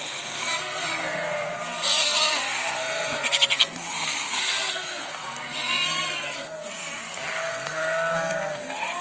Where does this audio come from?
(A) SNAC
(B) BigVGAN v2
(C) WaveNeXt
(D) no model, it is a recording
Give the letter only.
A